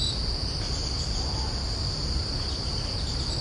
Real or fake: real